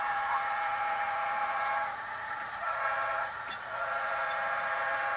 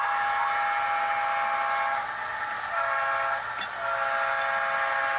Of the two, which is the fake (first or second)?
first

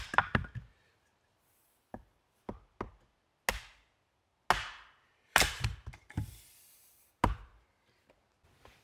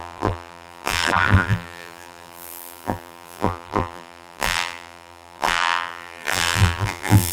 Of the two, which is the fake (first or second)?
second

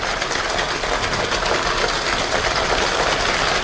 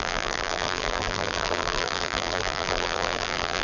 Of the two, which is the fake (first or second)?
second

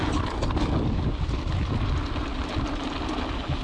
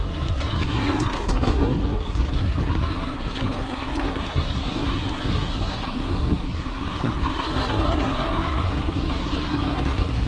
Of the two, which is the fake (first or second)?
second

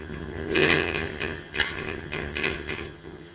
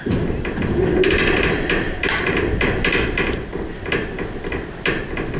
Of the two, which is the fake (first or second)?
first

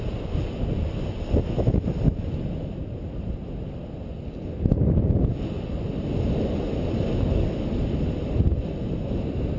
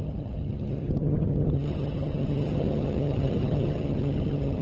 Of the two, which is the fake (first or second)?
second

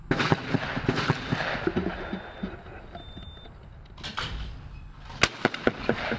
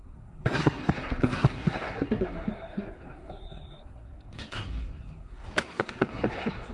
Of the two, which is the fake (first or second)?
second